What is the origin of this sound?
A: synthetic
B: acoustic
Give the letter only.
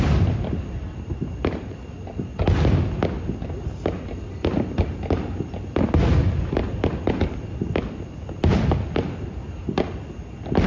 B